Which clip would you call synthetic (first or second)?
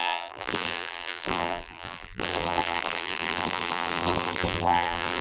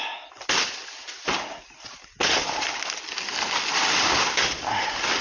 first